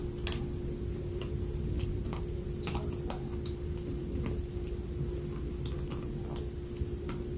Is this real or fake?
real